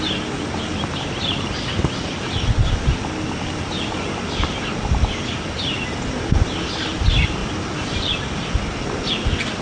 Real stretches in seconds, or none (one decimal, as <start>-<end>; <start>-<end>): 0.0-9.6